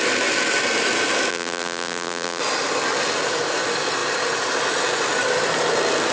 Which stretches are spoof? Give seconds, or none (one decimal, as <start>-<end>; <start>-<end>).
1.3-2.4